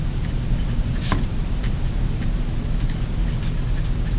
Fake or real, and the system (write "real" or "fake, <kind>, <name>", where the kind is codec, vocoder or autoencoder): real